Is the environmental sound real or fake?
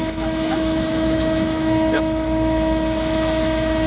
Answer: fake